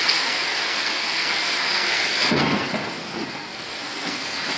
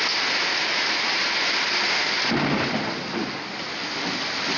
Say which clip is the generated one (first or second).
first